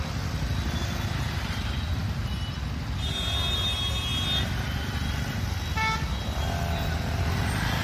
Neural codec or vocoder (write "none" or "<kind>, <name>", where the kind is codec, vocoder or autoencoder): none